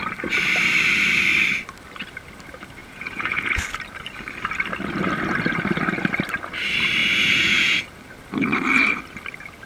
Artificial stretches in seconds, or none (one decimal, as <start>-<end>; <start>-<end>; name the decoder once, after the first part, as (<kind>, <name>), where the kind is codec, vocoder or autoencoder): 2.8-3.6 (vocoder, Vocos); 7.0-7.8